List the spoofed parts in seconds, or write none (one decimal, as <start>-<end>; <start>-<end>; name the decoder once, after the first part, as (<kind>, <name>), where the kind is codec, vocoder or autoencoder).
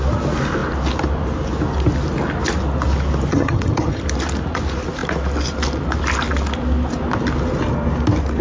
3.3-4.0 (vocoder, HiFi-GAN)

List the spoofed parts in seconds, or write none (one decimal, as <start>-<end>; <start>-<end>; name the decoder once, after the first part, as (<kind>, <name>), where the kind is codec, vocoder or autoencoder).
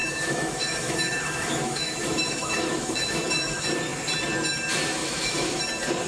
0.0-3.7 (autoencoder, DAC-VAE); 5.0-5.6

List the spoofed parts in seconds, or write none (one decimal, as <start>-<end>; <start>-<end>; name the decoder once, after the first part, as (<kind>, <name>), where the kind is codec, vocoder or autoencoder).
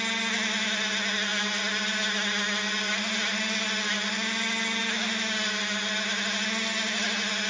none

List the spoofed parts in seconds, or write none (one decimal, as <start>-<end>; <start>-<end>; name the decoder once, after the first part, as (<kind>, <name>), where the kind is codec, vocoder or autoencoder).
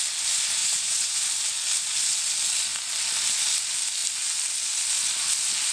0.6-1.2 (vocoder, Vocos)